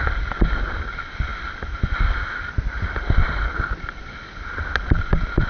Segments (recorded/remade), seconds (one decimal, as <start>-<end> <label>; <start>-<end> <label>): 0.0-5.5 recorded